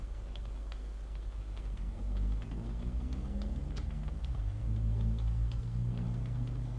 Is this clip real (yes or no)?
no